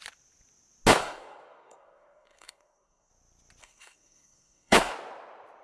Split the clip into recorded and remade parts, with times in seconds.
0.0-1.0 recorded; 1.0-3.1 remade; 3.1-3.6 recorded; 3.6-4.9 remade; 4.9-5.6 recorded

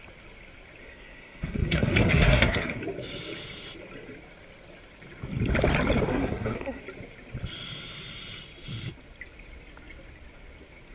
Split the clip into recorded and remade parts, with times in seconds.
0.0-0.8 recorded; 0.8-2.8 remade; 2.8-6.1 recorded; 6.1-6.8 remade; 6.8-10.9 recorded

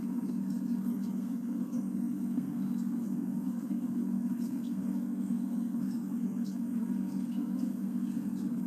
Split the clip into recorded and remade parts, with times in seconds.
0.0-8.7 remade

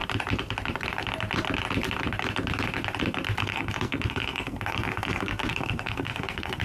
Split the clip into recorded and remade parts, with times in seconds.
0.0-3.4 recorded; 3.4-6.6 remade

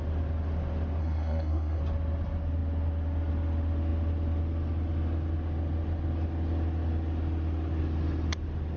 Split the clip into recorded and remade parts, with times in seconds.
0.0-1.0 recorded; 1.0-1.8 remade; 1.8-8.8 recorded

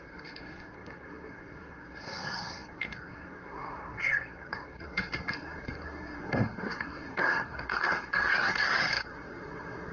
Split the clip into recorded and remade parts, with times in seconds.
0.0-9.9 remade

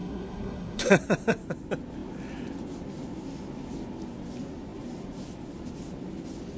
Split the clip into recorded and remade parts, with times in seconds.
0.0-0.9 remade; 0.9-6.6 recorded